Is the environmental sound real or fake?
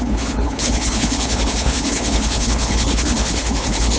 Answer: fake